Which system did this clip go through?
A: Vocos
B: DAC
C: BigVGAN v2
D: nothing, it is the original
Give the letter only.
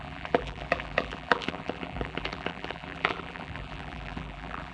C